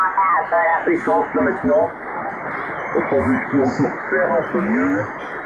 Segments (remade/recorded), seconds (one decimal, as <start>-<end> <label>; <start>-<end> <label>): 0.0-5.5 recorded